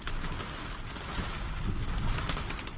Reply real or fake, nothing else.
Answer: real